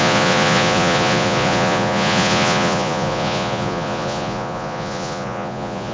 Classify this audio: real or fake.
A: fake